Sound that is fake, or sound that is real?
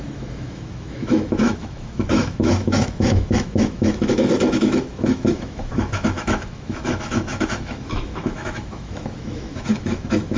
fake